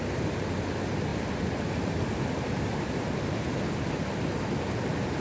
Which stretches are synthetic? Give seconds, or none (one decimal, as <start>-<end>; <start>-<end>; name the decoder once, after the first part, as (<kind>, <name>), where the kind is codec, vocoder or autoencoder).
none